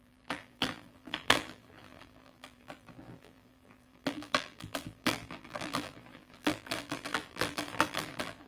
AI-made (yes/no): yes